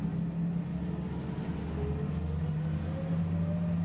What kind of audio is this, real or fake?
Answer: real